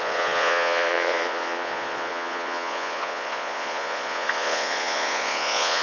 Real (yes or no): no